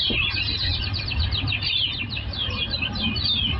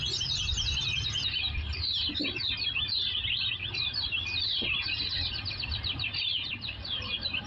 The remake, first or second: second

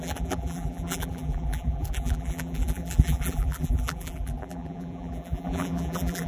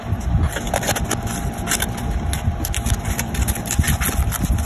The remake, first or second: first